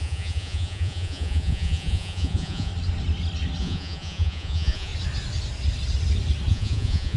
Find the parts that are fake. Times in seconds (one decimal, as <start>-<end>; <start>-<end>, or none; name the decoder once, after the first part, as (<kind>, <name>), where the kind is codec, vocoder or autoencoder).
0.0-2.7 (vocoder, Vocos); 3.6-4.9; 6.5-7.2

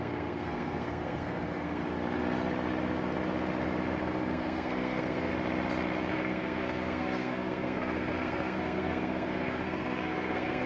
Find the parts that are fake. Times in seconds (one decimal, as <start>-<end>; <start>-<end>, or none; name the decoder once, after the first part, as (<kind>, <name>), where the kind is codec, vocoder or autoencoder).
0.0-1.8 (codec, SNAC); 4.0-5.3; 6.1-10.7

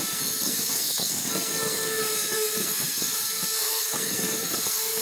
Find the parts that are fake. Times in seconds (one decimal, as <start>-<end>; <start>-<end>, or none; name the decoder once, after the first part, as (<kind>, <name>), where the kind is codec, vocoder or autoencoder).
0.0-5.0 (codec, SNAC)

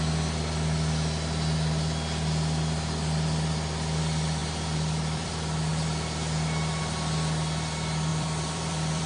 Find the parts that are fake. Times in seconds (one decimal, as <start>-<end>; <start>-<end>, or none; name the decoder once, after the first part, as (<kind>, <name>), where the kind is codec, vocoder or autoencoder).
4.4-5.3 (vocoder, BigVGAN v2); 8.1-9.1

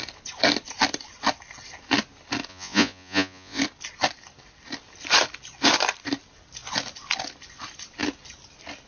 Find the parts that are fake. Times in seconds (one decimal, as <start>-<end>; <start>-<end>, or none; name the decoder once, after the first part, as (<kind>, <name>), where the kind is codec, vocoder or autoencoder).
2.5-3.6 (vocoder, Vocos)

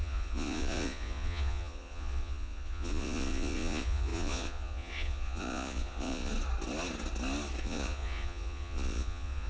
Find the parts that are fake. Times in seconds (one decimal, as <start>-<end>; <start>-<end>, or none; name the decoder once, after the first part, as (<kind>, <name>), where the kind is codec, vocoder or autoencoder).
0.0-6.3 (vocoder, Vocos); 7.6-9.5

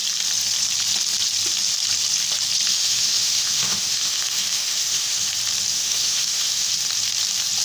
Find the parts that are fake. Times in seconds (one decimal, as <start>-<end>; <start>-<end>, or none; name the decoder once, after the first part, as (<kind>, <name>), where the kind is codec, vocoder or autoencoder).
2.7-5.3 (autoencoder, DAC-VAE); 5.7-6.7

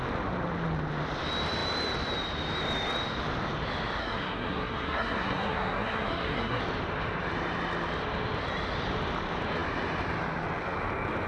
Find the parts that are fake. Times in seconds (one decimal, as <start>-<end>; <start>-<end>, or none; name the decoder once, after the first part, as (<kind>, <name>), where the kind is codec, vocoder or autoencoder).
4.0-6.6 (codec, SNAC)